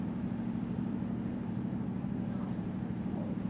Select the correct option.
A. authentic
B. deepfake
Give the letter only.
B